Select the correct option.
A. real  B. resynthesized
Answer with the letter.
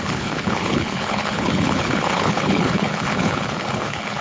B